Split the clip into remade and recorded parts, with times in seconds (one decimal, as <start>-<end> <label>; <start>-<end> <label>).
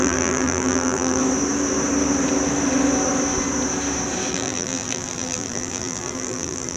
0.0-1.2 remade; 1.2-4.3 recorded; 4.3-6.8 remade